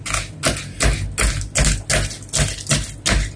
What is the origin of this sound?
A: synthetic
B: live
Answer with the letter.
B